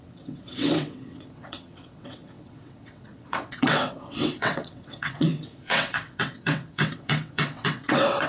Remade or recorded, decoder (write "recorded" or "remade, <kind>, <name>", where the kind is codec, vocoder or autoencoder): remade, vocoder, WaveNeXt